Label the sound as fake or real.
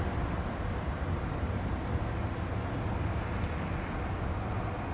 real